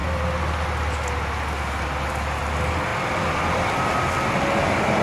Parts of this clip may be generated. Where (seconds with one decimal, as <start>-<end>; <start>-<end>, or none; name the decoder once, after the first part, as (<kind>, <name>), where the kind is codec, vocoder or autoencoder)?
2.9-3.7 (vocoder, BigVGAN v2)